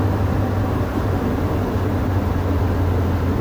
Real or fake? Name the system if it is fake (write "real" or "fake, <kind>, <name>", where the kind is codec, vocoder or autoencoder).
real